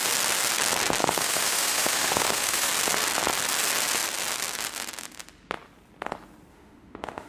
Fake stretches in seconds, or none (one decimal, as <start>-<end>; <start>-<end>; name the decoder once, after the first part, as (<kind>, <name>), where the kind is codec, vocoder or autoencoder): 1.0-2.7 (autoencoder, DAC-VAE); 6.5-7.3